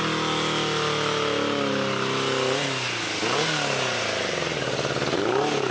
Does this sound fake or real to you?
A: real